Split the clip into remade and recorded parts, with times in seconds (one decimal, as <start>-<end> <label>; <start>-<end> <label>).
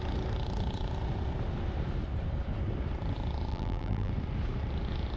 0.0-3.5 recorded; 3.5-4.1 remade; 4.1-5.2 recorded